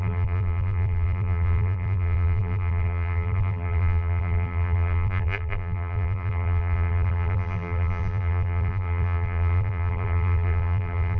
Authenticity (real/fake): fake